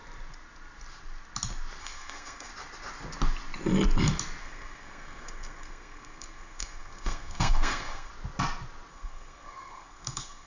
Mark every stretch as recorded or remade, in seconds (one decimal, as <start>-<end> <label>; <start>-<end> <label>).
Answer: 0.0-1.8 recorded; 1.8-2.5 remade; 2.5-4.4 recorded; 4.4-8.1 remade; 8.1-8.9 recorded; 8.9-10.5 remade